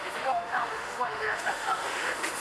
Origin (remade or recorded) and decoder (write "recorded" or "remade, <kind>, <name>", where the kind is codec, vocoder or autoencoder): remade, autoencoder, DAC-VAE